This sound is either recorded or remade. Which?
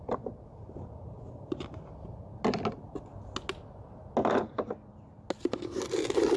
recorded